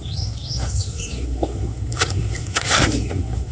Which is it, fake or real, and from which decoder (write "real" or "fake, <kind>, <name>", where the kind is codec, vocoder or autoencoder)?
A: fake, codec, SNAC